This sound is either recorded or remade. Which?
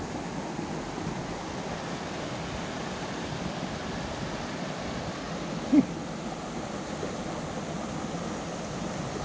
recorded